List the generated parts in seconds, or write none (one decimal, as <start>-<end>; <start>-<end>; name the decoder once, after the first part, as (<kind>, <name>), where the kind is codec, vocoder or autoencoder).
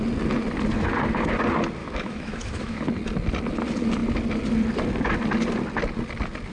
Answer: 1.8-2.8 (autoencoder, DAC-VAE)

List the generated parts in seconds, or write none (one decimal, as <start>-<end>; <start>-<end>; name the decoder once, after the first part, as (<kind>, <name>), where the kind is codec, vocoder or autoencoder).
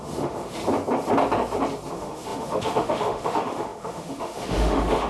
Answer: 0.0-0.6 (autoencoder, DAC-VAE); 1.9-5.1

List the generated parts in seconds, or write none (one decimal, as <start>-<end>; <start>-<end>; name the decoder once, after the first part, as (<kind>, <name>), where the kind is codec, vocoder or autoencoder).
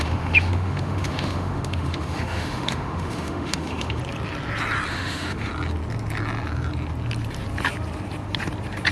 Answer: 0.0-4.0 (autoencoder, DAC-VAE); 4.9-5.5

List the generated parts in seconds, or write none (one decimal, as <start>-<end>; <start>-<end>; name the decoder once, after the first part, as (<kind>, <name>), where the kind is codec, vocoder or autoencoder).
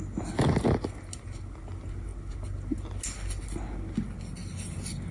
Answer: none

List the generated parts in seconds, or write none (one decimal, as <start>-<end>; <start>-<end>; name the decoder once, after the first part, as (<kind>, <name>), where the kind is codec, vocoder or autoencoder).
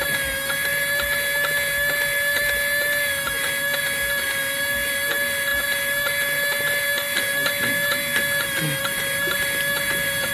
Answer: none